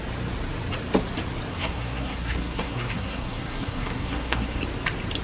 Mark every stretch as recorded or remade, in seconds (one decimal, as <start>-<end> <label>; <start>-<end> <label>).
0.0-1.5 recorded; 1.5-4.6 remade; 4.6-5.2 recorded